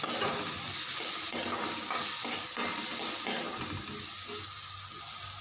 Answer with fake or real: real